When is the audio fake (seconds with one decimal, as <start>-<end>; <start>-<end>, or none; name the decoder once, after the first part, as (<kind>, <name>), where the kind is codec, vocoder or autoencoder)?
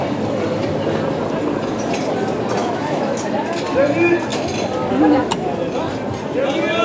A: 2.6-3.2 (autoencoder, DAC-VAE)